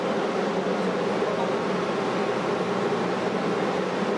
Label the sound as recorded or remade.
recorded